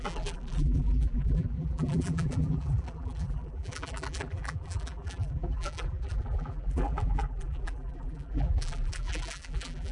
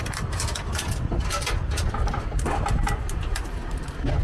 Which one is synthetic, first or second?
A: first